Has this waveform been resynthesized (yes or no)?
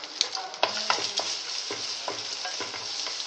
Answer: no